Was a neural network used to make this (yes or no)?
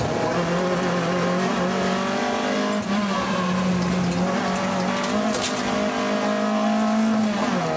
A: no